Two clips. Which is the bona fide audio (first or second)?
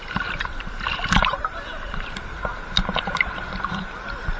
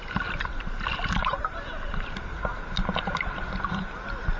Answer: second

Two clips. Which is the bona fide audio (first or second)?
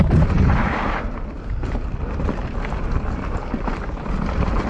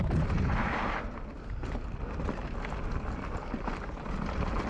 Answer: second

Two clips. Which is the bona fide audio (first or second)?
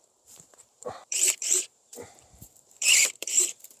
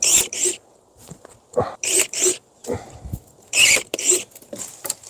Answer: second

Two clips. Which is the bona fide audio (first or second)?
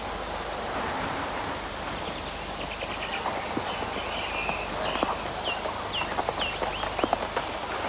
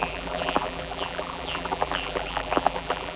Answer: first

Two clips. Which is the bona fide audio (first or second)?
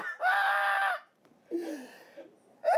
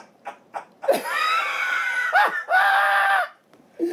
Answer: first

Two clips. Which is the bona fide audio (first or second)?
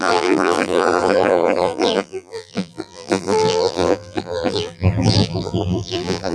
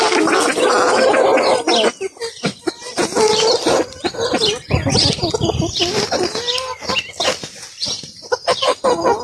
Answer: second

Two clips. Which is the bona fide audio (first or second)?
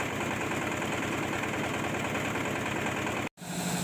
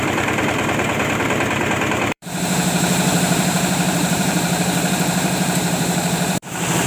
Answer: first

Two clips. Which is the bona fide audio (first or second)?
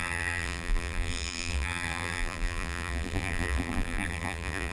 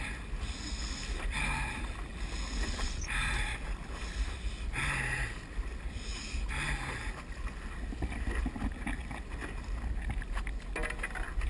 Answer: second